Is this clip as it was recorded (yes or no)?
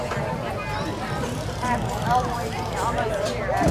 yes